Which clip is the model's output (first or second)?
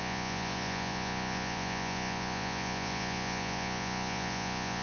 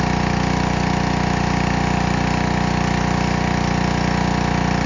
first